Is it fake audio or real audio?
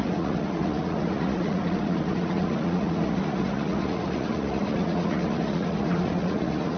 fake